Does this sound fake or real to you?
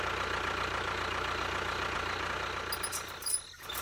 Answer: real